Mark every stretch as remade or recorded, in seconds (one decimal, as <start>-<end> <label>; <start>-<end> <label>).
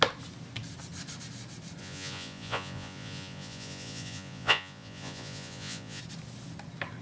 0.0-1.8 recorded; 1.8-6.0 remade; 6.0-7.0 recorded